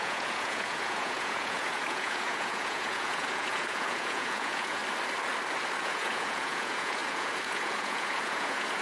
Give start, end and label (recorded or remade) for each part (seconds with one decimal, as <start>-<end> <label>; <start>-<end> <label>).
0.0-4.8 remade; 4.8-5.8 recorded; 5.8-8.8 remade